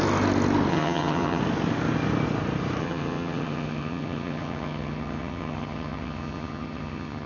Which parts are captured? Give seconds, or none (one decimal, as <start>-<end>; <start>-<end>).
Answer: 0.0-0.7; 1.4-2.8